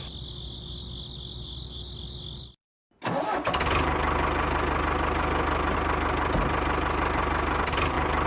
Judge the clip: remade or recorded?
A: recorded